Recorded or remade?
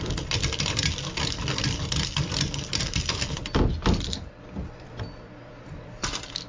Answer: remade